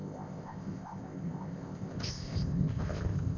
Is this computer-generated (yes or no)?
yes